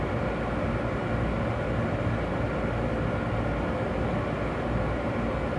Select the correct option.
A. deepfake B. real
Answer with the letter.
B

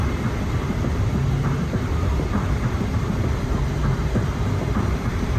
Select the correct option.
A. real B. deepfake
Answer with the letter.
B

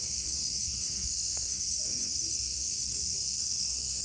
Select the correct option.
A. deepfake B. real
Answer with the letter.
A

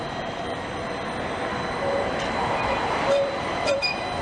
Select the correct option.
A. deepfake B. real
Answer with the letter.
A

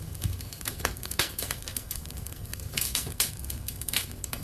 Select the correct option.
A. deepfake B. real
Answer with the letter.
A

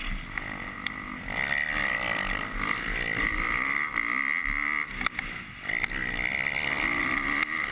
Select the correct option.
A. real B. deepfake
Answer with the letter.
A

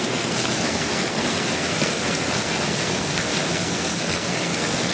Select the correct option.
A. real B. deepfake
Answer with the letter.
B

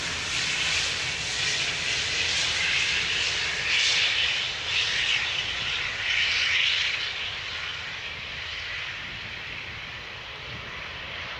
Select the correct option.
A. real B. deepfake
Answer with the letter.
A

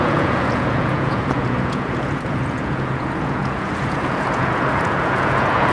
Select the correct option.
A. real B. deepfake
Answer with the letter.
B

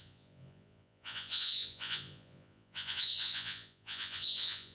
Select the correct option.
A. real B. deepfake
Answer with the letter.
B